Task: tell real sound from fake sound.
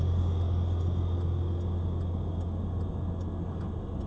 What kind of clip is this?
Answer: real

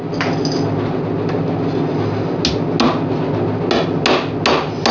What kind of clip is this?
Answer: real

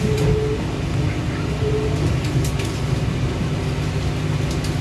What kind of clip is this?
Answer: real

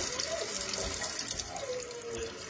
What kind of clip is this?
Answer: real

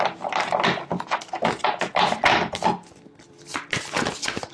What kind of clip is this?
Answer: real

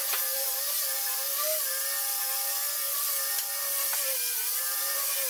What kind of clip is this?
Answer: real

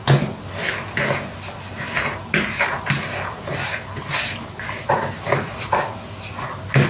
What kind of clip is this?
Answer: real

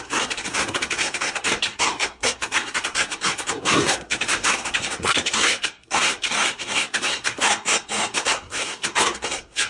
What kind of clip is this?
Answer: fake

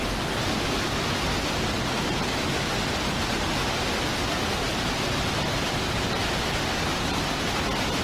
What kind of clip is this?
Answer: real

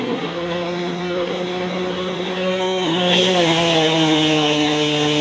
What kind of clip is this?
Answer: fake